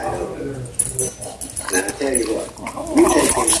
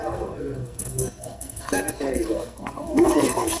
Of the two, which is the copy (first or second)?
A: second